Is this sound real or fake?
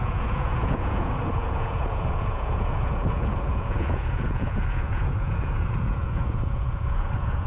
fake